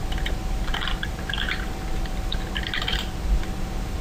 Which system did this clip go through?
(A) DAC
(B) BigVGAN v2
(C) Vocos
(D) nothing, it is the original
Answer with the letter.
B